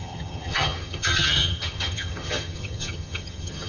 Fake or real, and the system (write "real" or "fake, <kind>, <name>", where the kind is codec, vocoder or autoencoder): fake, vocoder, HiFi-GAN